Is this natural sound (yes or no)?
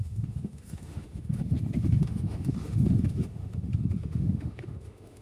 no